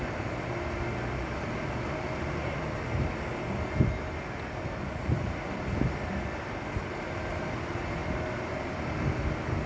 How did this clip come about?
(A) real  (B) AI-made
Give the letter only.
A